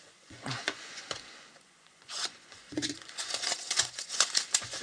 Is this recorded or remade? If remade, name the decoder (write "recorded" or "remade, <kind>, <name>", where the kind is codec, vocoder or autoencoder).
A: remade, vocoder, Vocos